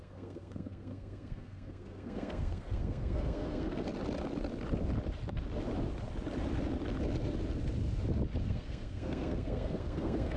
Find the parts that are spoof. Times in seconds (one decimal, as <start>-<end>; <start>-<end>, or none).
0.0-3.9; 8.4-10.4